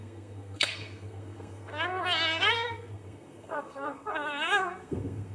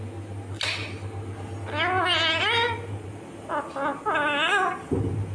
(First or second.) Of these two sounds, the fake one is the first